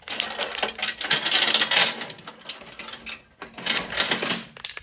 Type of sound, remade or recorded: recorded